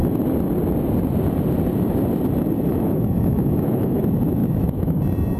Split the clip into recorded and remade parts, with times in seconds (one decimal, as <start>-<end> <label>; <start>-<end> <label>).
0.0-2.7 recorded; 2.7-4.0 remade; 4.0-4.4 recorded; 4.4-5.0 remade; 5.0-5.4 recorded